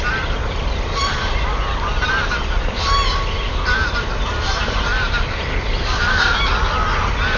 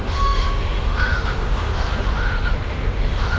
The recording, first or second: first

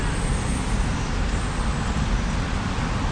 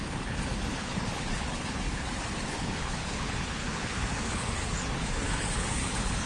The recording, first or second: first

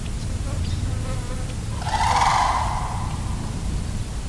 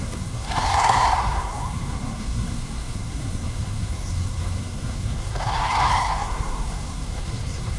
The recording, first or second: first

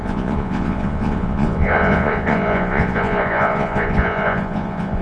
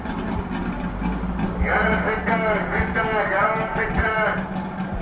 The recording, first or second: second